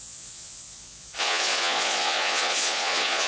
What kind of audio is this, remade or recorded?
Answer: remade